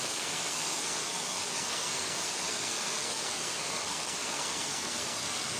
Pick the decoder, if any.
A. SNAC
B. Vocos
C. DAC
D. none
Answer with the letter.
A